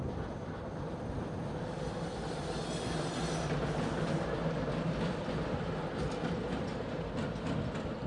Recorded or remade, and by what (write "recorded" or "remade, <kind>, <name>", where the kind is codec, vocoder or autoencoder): recorded